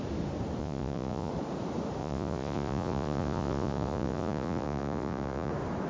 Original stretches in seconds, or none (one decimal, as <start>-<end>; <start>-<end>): 0.0-0.6; 1.3-2.0; 5.5-5.9